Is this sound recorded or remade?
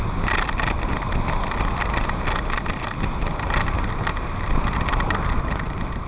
recorded